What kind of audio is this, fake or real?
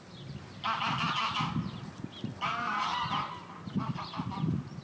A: real